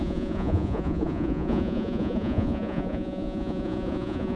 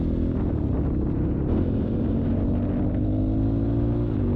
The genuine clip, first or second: second